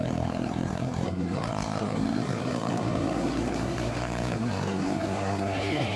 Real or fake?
fake